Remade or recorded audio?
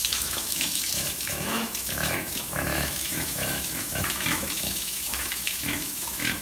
remade